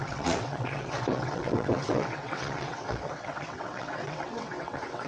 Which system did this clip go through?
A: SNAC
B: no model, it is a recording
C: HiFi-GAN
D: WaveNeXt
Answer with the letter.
D